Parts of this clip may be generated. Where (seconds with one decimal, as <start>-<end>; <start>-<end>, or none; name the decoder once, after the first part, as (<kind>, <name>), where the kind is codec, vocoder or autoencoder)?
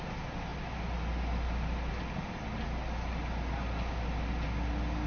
none